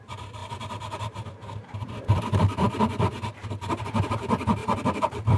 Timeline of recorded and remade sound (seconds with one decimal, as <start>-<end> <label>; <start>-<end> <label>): 0.0-5.4 remade